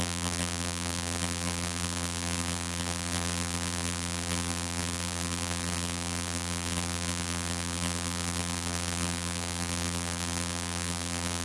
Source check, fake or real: fake